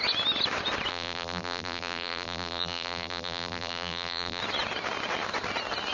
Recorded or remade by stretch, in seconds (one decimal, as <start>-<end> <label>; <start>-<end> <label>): 0.0-0.9 recorded; 0.9-4.4 remade; 4.4-5.9 recorded